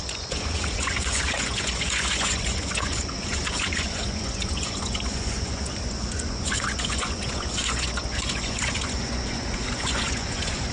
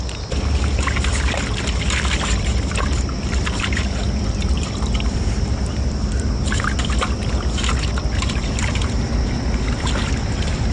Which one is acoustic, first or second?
second